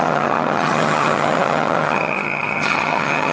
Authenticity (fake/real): fake